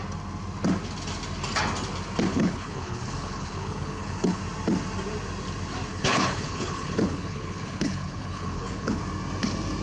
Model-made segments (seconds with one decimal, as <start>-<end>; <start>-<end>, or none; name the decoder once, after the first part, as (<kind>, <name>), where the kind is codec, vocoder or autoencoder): 2.3-4.4 (codec, HILCodec); 5.9-9.0